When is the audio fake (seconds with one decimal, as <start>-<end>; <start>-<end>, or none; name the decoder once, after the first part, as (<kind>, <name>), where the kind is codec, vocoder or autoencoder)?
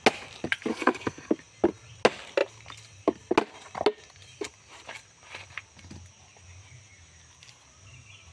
0.7-1.3 (codec, SNAC)